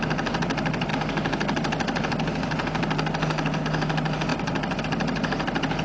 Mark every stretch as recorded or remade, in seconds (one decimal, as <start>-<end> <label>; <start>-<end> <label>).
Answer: 0.0-5.8 recorded